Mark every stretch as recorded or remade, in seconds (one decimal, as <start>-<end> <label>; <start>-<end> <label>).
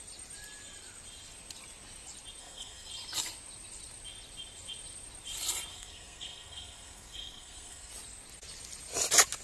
0.0-2.4 recorded; 2.4-2.9 remade; 2.9-5.7 recorded; 5.7-7.9 remade; 7.9-9.4 recorded